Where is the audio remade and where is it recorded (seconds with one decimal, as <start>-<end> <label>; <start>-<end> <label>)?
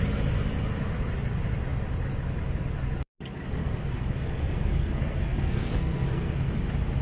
0.0-3.6 recorded; 3.6-6.5 remade; 6.5-7.0 recorded